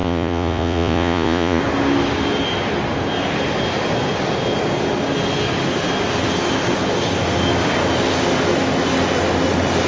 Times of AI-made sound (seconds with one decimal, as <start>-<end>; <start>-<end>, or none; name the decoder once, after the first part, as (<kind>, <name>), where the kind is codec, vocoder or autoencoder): 0.0-1.6 (vocoder, Vocos)